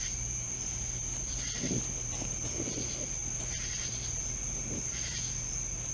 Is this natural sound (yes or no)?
yes